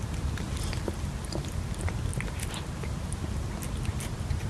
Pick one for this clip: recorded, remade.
recorded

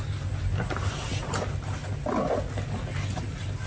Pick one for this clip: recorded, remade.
recorded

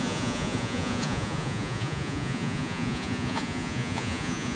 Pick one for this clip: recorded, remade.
remade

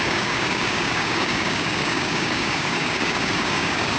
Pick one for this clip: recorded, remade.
remade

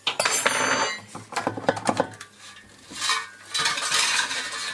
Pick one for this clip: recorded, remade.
recorded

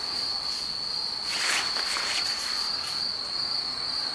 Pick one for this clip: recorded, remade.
recorded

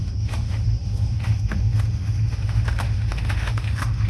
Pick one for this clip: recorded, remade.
remade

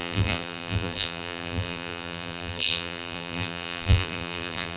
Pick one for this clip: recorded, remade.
remade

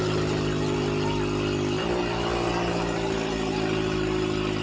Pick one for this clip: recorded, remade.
recorded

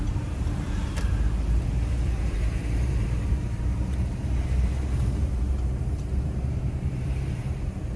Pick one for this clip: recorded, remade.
remade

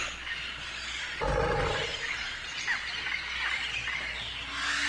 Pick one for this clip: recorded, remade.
recorded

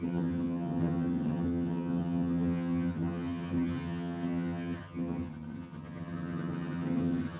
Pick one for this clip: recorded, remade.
remade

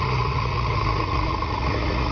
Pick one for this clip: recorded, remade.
remade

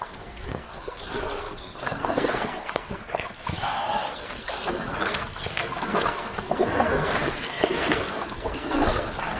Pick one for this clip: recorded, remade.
remade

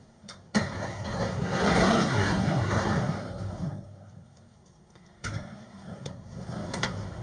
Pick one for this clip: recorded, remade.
remade